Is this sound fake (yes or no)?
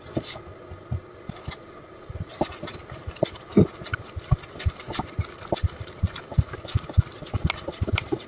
no